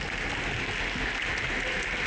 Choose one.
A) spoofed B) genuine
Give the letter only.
B